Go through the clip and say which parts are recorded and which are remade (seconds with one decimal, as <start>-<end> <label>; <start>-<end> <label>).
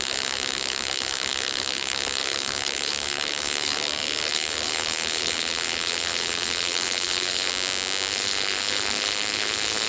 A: 0.0-7.5 remade; 7.5-8.1 recorded; 8.1-9.9 remade